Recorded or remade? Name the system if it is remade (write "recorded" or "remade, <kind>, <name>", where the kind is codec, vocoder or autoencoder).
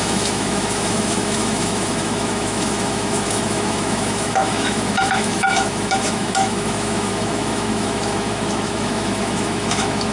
remade, autoencoder, DAC-VAE